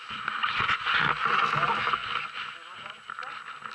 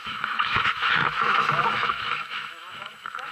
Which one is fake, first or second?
second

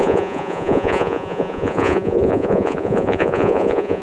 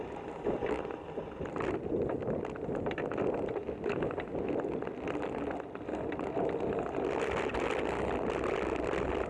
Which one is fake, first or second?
first